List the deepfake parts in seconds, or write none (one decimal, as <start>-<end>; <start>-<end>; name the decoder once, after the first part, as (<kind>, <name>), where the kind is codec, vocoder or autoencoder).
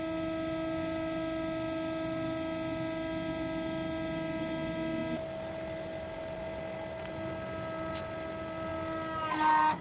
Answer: none